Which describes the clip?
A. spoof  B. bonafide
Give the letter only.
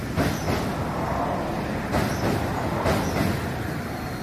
B